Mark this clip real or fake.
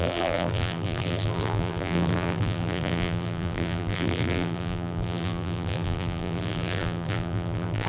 fake